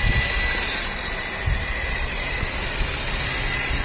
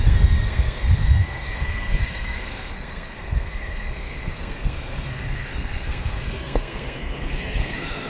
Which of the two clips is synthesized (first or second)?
second